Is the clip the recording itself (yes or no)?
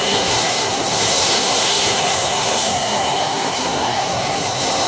no